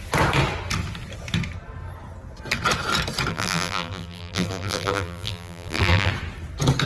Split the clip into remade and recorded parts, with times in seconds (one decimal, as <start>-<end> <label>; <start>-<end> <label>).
0.0-3.3 recorded; 3.3-6.1 remade; 6.1-6.9 recorded